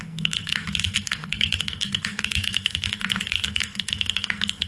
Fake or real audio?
fake